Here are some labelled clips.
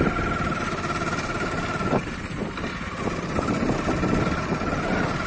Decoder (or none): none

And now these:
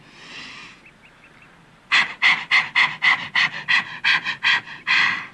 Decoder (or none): none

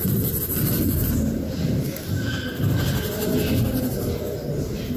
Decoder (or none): none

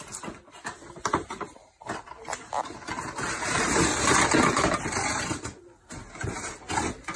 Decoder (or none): none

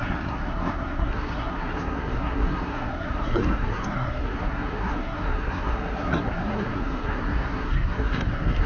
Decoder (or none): codec, SNAC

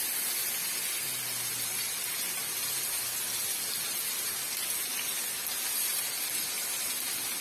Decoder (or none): none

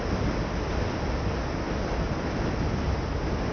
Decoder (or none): none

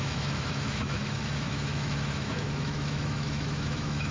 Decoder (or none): autoencoder, DAC-VAE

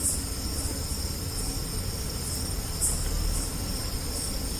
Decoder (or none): none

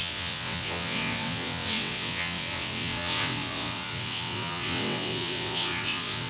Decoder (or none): vocoder, WaveNeXt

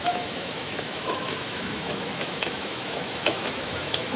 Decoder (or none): autoencoder, DAC-VAE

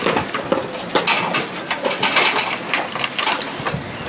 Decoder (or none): none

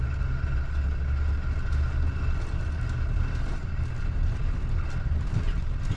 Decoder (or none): none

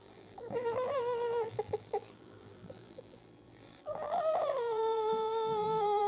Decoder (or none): vocoder, BigVGAN v2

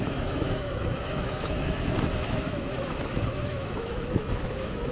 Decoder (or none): autoencoder, DAC-VAE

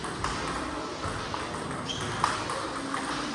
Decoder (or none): none